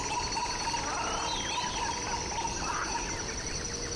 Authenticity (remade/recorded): recorded